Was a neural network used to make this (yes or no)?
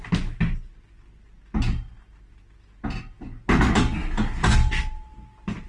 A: no